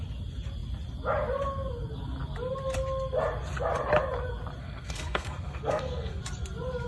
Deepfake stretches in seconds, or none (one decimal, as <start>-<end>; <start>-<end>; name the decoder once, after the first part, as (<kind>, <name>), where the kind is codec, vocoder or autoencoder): 4.6-6.2 (codec, SNAC)